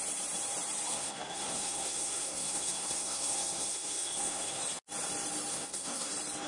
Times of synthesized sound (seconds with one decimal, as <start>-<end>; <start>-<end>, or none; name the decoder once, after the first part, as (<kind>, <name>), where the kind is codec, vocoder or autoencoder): 0.9-4.6 (codec, SNAC); 5.5-6.1